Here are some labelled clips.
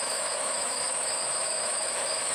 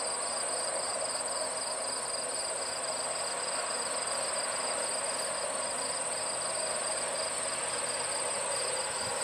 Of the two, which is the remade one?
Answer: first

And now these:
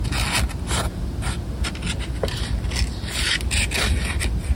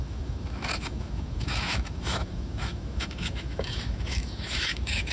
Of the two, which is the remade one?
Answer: second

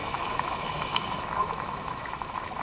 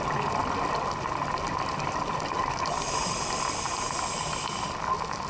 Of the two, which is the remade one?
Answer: first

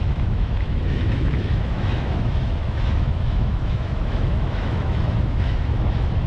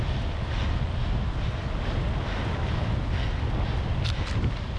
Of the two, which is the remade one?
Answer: first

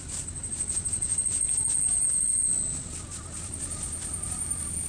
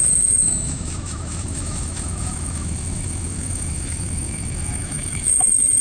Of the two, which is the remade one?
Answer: second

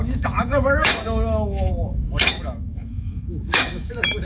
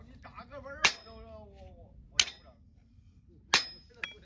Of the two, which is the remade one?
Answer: first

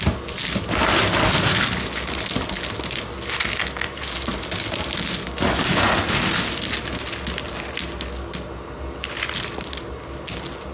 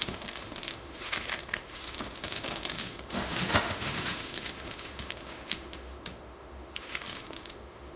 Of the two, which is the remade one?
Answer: second